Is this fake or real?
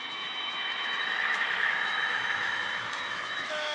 fake